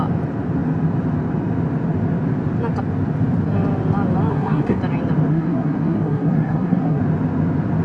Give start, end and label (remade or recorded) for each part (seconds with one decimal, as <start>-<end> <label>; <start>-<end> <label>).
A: 0.0-4.3 recorded; 4.3-4.8 remade; 4.8-5.3 recorded; 5.3-7.0 remade; 7.0-7.8 recorded

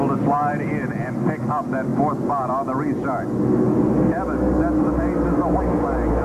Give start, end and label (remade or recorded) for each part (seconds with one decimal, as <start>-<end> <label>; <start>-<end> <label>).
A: 0.0-0.9 recorded; 0.9-1.5 remade; 1.5-6.2 recorded